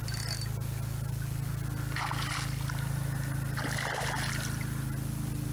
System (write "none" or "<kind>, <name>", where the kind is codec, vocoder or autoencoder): none